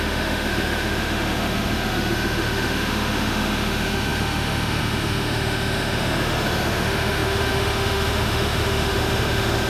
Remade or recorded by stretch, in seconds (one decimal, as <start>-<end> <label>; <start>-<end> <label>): 0.0-9.7 remade